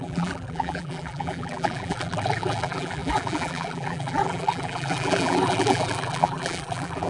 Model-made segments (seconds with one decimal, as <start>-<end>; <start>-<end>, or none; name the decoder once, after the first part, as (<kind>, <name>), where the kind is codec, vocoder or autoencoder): 0.0-7.1 (vocoder, BigVGAN v2)